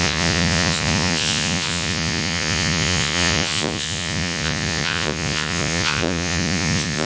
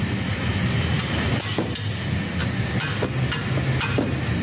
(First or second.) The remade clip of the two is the first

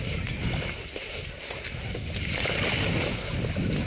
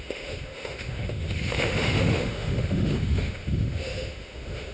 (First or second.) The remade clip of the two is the second